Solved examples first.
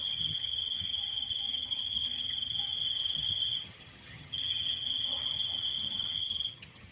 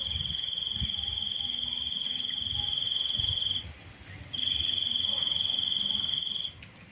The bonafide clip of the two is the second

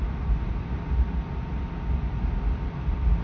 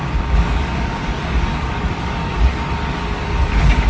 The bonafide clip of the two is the first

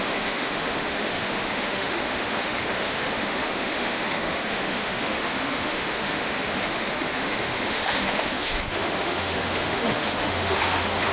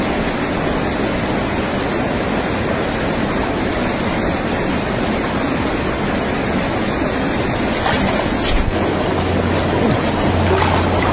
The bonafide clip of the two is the second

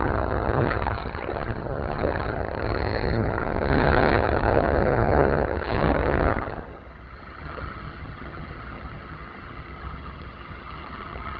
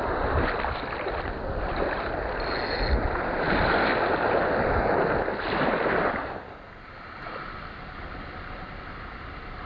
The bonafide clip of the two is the second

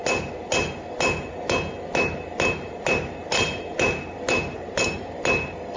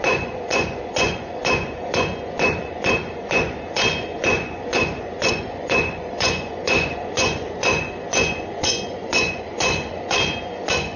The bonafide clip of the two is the first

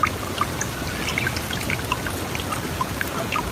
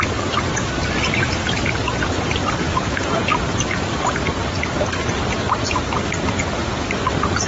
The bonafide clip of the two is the first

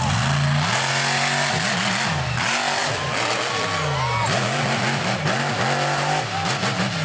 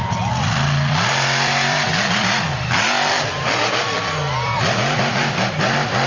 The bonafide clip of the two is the first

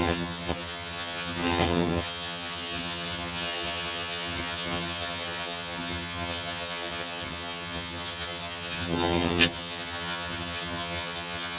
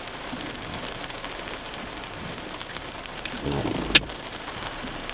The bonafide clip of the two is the second